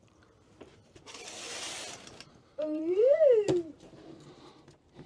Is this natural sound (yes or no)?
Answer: no